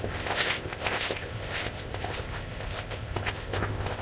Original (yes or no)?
no